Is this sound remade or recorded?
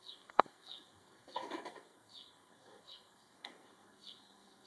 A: remade